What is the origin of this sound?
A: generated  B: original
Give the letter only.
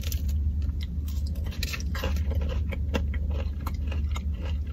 B